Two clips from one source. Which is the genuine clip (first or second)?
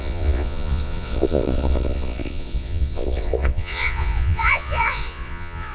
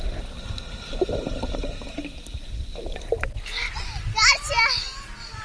second